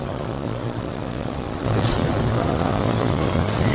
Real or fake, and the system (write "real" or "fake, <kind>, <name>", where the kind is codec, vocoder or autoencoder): fake, vocoder, Vocos